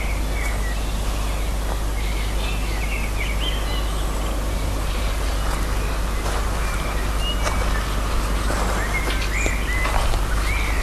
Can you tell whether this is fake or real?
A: real